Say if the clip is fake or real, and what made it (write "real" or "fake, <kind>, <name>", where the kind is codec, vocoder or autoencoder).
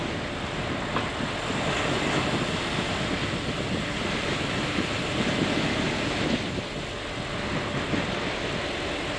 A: real